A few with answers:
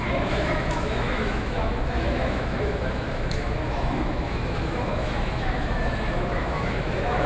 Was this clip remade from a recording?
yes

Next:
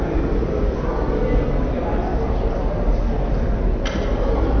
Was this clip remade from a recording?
no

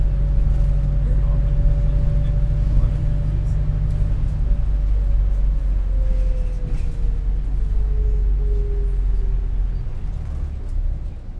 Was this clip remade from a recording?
no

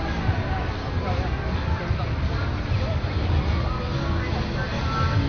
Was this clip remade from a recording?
no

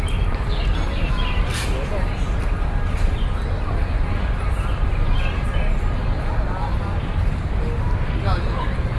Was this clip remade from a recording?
no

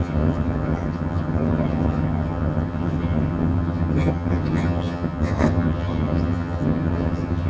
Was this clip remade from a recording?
yes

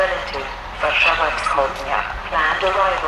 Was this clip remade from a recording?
yes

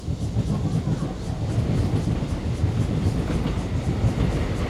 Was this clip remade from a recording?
no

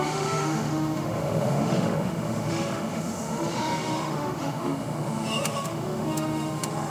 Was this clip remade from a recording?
yes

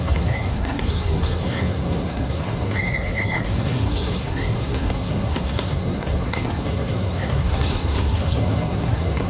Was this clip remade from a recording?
yes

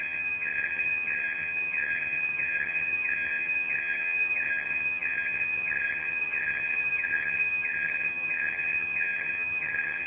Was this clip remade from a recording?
yes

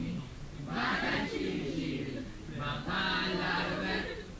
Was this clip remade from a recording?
no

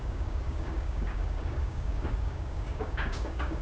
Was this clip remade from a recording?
yes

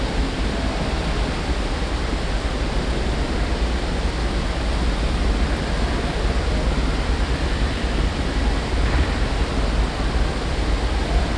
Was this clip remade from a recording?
no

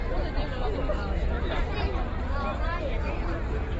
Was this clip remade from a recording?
no